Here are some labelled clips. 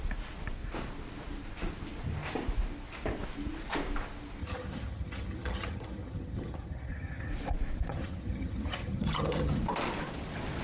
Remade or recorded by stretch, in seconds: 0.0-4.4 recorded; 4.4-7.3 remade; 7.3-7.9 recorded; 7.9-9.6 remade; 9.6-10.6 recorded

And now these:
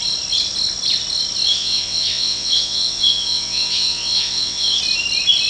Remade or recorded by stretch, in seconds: 0.0-1.5 recorded; 1.5-4.8 remade; 4.8-5.5 recorded

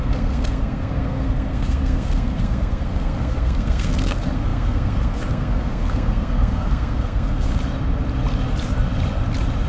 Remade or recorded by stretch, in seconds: 0.0-7.5 remade; 7.5-9.7 recorded

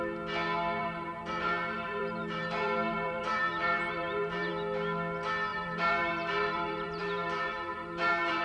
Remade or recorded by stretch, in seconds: 0.0-0.8 recorded; 0.8-4.5 remade; 4.5-5.5 recorded; 5.5-8.4 remade

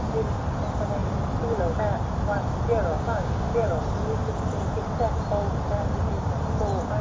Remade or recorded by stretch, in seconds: 0.0-2.9 recorded; 2.9-3.7 remade; 3.7-7.0 recorded

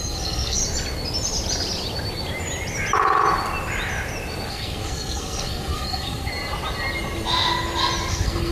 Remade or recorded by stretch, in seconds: 0.0-0.6 remade; 0.6-4.5 recorded; 4.5-6.3 remade; 6.3-8.1 recorded; 8.1-8.5 remade

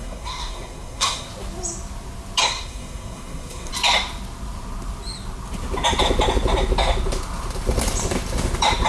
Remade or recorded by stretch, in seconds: 0.0-1.3 remade; 1.3-2.4 recorded; 2.4-3.7 remade; 3.7-8.9 recorded

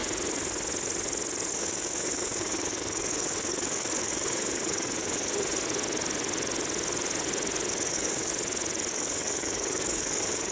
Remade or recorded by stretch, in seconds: 0.0-1.5 recorded; 1.5-5.3 remade; 5.3-7.7 recorded; 7.7-8.3 remade; 8.3-8.9 recorded; 8.9-10.5 remade